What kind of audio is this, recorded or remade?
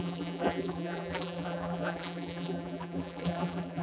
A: remade